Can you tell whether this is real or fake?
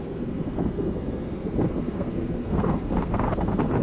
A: fake